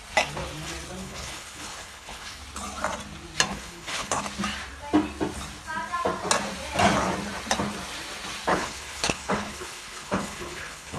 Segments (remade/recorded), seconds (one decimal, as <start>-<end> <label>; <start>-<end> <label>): 0.0-1.0 recorded; 1.0-2.4 remade; 2.4-3.5 recorded; 3.5-4.2 remade; 4.2-8.5 recorded; 8.5-11.0 remade